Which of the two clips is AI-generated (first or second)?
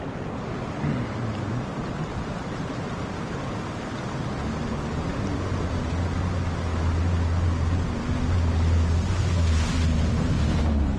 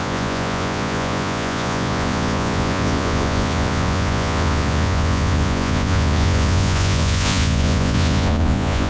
second